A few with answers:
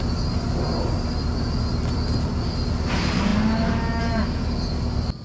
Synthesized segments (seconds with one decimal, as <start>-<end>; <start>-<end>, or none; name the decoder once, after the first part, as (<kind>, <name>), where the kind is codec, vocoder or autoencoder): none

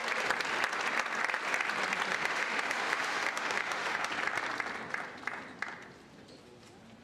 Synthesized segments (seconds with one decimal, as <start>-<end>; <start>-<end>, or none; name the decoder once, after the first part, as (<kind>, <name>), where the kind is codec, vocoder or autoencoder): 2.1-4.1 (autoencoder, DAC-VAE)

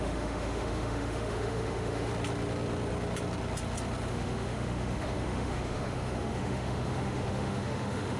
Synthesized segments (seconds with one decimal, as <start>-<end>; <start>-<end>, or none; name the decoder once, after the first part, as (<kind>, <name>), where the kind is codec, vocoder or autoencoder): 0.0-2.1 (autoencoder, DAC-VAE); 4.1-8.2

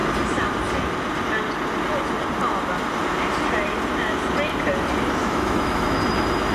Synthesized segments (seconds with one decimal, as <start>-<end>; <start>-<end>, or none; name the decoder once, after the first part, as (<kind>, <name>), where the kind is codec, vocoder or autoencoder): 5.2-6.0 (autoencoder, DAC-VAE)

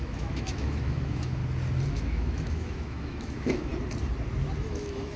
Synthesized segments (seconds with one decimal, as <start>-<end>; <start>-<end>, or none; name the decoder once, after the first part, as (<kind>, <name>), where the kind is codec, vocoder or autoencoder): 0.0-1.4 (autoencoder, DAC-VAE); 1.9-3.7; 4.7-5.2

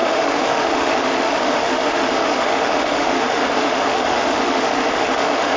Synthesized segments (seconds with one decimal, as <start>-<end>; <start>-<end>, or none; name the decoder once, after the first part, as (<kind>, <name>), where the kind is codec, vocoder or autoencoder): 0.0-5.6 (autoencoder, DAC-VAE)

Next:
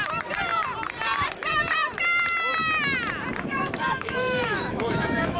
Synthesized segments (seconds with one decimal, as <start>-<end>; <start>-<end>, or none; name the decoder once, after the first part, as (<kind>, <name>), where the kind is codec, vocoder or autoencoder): 3.5-5.4 (autoencoder, DAC-VAE)

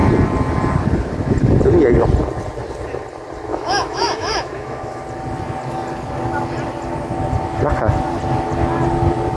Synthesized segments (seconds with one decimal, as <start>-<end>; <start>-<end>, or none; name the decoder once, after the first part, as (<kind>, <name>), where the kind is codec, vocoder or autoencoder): 3.5-5.0 (autoencoder, DAC-VAE)